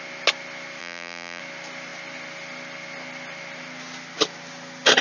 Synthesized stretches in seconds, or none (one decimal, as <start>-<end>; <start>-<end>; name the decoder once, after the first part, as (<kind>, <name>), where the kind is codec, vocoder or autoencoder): 0.8-1.4 (vocoder, BigVGAN v2)